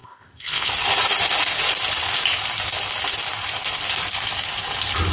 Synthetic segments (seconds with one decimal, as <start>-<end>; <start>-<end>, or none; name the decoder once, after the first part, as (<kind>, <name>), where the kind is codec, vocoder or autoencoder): 0.0-0.7 (codec, ZipCodec)